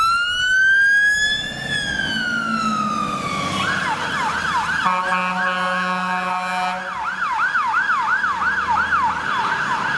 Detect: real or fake real